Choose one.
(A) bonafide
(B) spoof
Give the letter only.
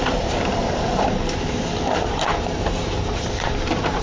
B